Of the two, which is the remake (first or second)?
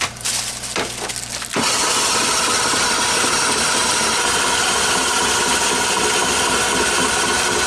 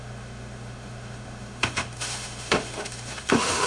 second